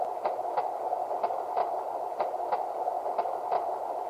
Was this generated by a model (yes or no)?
no